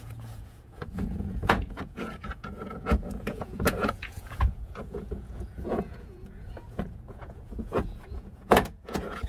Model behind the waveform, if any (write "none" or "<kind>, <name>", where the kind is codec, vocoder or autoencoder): vocoder, Vocos